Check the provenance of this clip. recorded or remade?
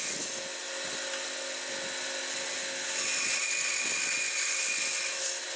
recorded